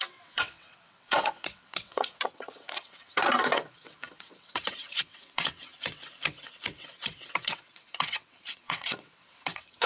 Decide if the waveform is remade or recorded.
remade